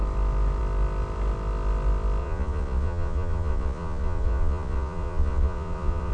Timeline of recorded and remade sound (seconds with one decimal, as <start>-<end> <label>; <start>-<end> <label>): 0.0-2.2 recorded; 2.2-6.1 remade